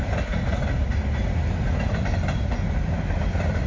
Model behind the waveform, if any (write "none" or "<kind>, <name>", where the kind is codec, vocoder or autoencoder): none